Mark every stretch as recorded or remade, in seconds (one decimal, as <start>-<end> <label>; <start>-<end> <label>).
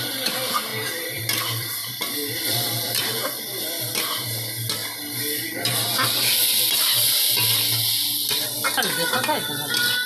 0.0-0.7 recorded; 0.7-3.0 remade; 3.0-10.1 recorded